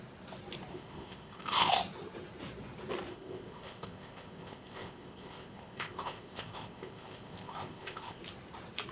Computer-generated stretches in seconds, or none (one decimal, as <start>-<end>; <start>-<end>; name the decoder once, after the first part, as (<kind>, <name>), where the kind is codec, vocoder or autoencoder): 0.7-1.7 (codec, ZipCodec); 3.1-8.2